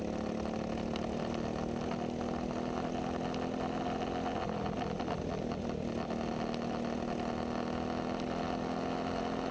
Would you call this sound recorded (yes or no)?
yes